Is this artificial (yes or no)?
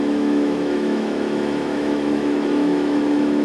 yes